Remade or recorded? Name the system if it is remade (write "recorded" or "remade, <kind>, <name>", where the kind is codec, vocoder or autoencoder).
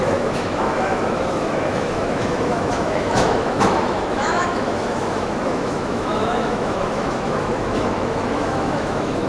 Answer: remade, autoencoder, DAC-VAE